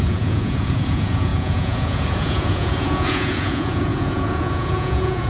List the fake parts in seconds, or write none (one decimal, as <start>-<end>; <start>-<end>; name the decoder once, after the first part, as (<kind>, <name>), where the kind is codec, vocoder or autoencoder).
0.0-5.3 (vocoder, Vocos)